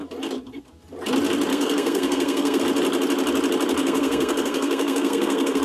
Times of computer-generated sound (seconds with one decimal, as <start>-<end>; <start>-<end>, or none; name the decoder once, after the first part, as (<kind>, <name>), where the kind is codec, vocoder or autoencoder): 1.5-2.6 (codec, SNAC); 3.8-5.6

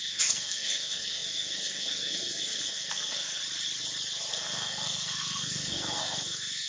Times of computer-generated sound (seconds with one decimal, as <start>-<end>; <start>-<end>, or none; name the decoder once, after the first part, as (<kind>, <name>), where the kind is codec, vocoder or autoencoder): 0.0-3.4 (codec, SNAC); 4.3-6.7

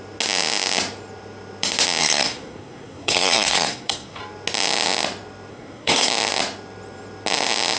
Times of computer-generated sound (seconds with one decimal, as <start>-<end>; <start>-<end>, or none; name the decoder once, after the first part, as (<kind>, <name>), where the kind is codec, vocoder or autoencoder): 2.0-4.2 (codec, SNAC); 5.5-6.1

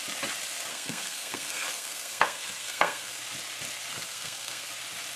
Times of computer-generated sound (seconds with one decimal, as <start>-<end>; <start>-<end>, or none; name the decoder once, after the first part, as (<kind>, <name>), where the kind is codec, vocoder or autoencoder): 0.7-3.2 (codec, SNAC); 3.9-4.7

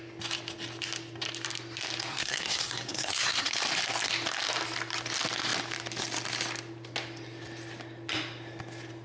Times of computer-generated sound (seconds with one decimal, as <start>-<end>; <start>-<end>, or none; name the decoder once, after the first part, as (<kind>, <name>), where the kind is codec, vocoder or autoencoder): 2.1-3.6 (codec, SNAC)

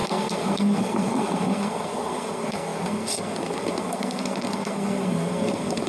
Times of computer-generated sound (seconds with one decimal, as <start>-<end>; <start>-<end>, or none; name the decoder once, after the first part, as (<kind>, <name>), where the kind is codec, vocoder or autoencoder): 0.0-5.9 (codec, SNAC)

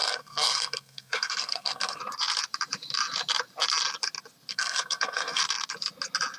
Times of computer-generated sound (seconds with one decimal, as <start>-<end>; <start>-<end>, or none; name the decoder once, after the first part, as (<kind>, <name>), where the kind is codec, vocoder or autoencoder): 0.0-2.0 (codec, SNAC); 4.5-5.4

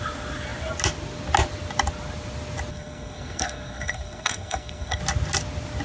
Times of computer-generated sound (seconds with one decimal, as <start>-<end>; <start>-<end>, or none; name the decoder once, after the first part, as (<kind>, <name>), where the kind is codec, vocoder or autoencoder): 2.7-5.0 (codec, SNAC)